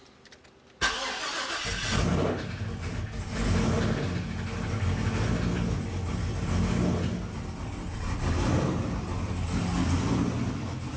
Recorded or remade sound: recorded